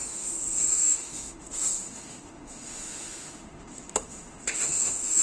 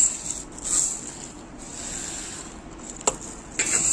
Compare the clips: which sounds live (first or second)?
second